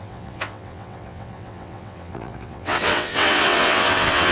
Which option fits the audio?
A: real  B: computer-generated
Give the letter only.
B